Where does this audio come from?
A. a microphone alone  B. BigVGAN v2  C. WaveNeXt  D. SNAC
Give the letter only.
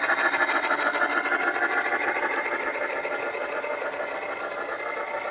A